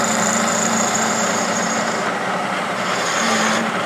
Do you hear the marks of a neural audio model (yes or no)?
yes